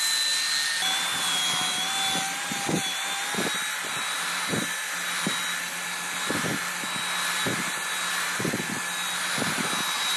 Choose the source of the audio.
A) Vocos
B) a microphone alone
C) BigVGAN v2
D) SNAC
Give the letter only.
B